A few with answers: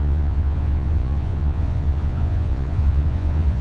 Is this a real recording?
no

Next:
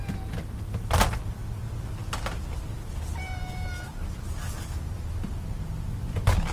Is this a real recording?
yes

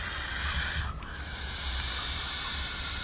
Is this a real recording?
yes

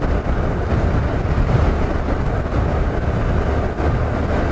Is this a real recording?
yes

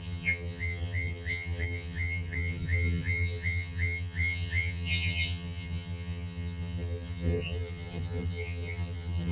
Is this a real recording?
no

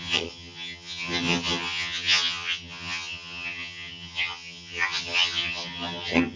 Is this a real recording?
no